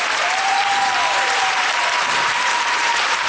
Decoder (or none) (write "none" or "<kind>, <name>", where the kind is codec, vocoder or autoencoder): vocoder, BigVGAN v2